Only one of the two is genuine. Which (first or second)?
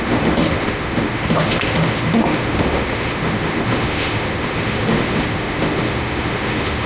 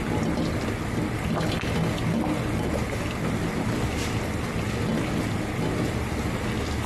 second